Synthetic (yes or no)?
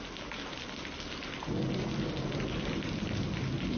no